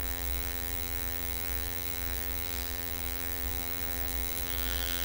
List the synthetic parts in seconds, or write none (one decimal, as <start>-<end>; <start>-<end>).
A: 0.0-5.0